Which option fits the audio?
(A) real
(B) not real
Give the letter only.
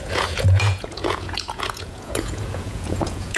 B